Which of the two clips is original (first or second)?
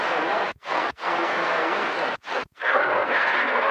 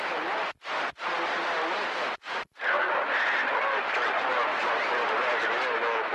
second